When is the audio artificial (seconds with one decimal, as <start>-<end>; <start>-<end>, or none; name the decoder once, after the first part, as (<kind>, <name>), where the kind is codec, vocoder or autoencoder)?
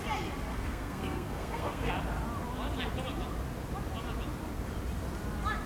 0.5-1.9 (codec, SNAC)